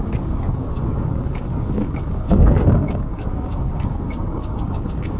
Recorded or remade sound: remade